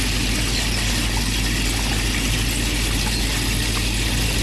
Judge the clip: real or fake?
real